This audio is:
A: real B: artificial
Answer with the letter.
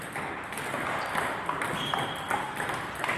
A